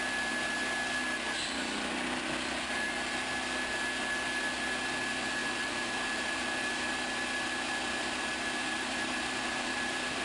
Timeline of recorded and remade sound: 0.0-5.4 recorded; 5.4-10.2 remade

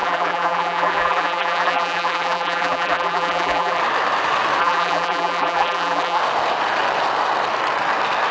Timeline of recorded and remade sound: 0.0-3.8 remade; 3.8-4.6 recorded; 4.6-6.2 remade; 6.2-8.3 recorded

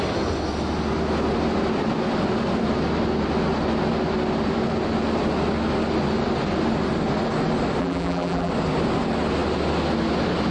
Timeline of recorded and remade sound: 0.0-7.8 recorded; 7.8-8.5 remade; 8.5-10.5 recorded